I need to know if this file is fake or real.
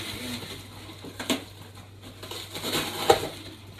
real